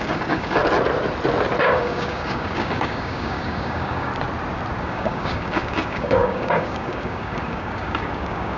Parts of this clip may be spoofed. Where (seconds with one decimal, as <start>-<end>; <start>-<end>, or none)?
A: 0.0-0.6; 1.6-4.1; 4.8-8.6